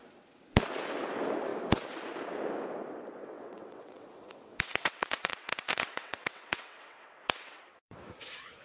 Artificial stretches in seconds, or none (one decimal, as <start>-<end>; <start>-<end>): 3.2-8.0